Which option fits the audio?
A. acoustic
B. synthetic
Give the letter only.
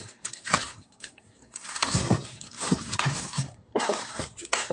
B